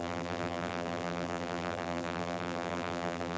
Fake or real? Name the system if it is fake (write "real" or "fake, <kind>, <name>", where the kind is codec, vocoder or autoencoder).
fake, vocoder, BigVGAN v2